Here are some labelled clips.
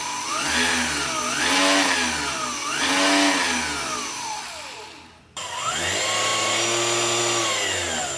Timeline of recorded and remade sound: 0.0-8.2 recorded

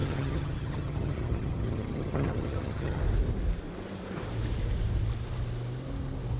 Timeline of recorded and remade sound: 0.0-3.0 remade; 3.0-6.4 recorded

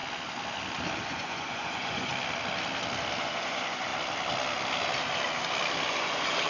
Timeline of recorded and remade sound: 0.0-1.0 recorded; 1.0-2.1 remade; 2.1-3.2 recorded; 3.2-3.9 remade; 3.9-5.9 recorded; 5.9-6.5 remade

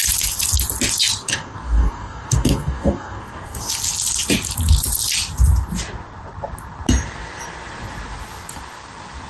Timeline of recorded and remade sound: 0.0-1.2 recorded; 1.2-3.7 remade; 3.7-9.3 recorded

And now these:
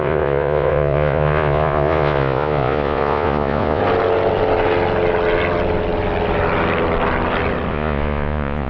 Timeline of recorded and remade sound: 0.0-3.8 remade; 3.8-7.7 recorded; 7.7-8.7 remade

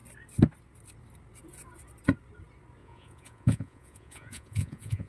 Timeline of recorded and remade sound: 0.0-2.8 recorded; 2.8-5.1 remade

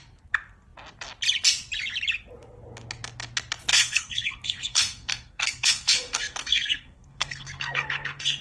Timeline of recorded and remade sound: 0.0-3.7 recorded; 3.7-8.4 remade